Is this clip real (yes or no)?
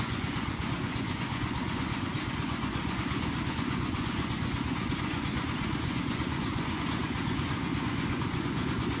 no